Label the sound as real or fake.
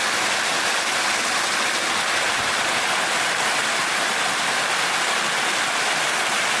real